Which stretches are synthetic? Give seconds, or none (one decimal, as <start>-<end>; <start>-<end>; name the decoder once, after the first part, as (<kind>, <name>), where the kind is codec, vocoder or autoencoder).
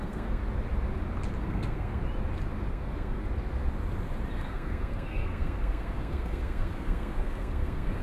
0.0-0.4 (codec, SNAC); 1.4-2.0; 2.7-3.2; 4.4-8.0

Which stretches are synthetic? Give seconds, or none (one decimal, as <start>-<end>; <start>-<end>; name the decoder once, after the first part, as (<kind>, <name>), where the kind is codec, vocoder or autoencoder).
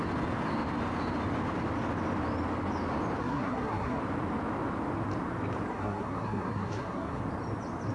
3.2-4.0 (codec, SNAC); 5.7-7.2